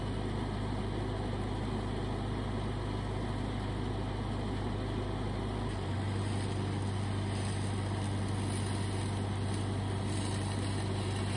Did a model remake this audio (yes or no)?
no